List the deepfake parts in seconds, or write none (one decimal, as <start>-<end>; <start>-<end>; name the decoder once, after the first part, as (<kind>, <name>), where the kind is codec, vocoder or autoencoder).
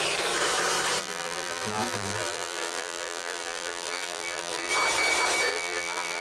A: 1.0-4.7 (vocoder, BigVGAN v2); 5.5-6.2